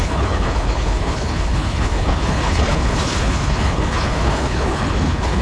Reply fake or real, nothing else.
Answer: fake